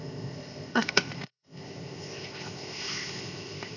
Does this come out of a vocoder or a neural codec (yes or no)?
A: yes